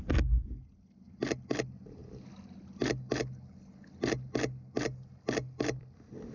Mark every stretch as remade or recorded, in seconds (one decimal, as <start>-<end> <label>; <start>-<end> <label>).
0.0-6.3 recorded